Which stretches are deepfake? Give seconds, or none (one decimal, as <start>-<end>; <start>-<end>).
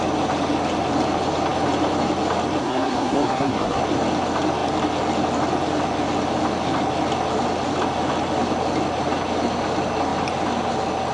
2.6-3.8